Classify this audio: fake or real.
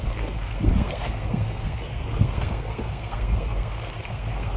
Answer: fake